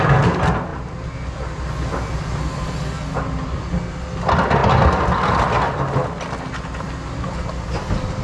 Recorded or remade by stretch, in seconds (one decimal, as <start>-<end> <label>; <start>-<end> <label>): 0.0-8.2 recorded